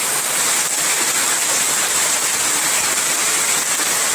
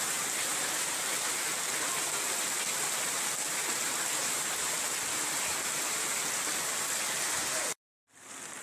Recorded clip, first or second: first